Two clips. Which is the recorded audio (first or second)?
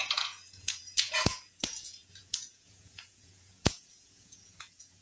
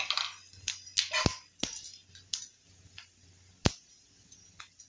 second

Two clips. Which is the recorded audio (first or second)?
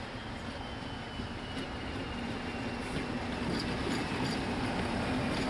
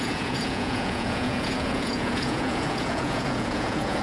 first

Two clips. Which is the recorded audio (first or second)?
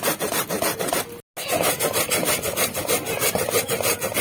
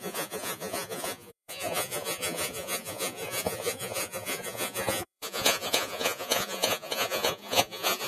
first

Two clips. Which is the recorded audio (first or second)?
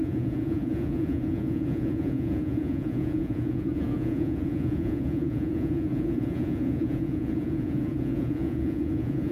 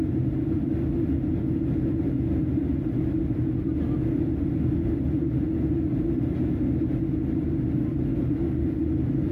second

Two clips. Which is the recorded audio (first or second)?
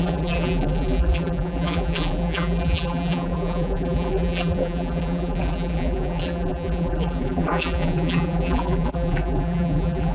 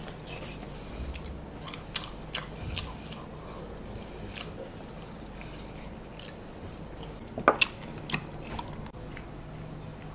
second